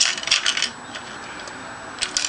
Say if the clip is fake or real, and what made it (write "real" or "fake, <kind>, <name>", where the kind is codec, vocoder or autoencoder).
real